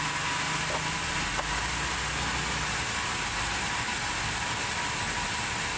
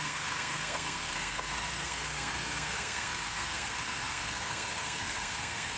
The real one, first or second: first